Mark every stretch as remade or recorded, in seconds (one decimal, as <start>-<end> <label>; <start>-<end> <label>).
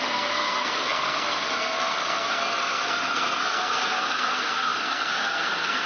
0.0-5.9 remade